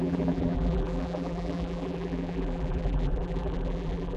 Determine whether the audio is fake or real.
fake